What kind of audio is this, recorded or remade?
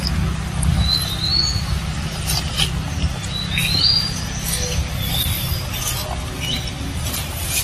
recorded